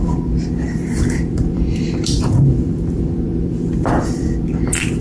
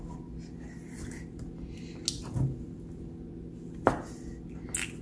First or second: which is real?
second